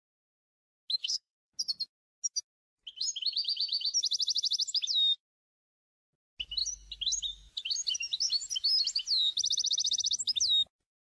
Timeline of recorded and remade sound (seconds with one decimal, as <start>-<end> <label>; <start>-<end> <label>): 0.0-1.0 recorded; 1.0-1.5 remade; 1.5-11.1 recorded

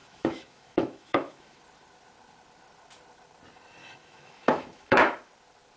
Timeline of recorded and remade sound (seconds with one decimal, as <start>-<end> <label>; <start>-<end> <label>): 0.0-1.6 remade; 1.6-3.8 recorded; 3.8-5.3 remade; 5.3-5.8 recorded

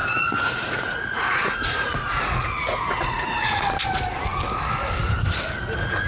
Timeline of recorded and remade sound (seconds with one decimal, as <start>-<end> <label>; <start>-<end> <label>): 0.0-3.7 remade; 3.7-6.1 recorded

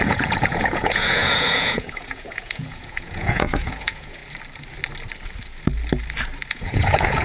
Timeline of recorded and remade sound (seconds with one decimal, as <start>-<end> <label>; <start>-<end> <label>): 0.0-4.2 remade; 4.2-6.5 recorded; 6.5-7.2 remade

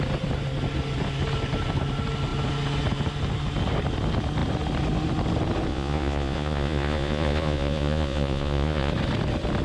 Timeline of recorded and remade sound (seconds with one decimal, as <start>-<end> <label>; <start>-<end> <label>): 0.0-5.7 recorded; 5.7-8.9 remade; 8.9-9.6 recorded

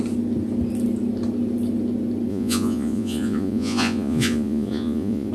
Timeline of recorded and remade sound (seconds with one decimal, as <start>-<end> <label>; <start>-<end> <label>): 0.0-2.3 recorded; 2.3-5.3 remade